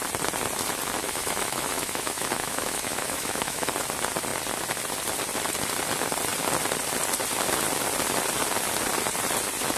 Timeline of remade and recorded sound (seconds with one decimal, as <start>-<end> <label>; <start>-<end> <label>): 0.0-1.0 recorded; 1.0-3.7 remade; 3.7-9.8 recorded